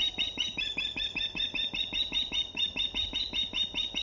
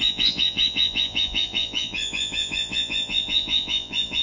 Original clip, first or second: first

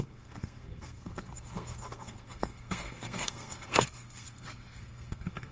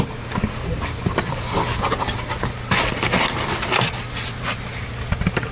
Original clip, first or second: second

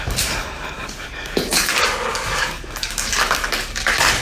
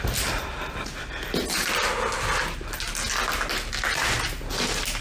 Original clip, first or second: second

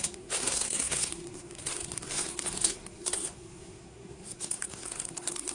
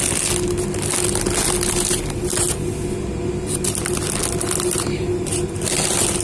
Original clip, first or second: second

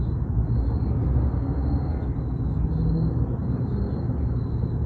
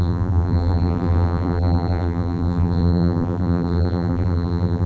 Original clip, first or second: first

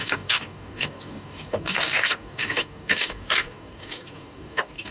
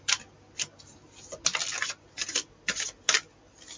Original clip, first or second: second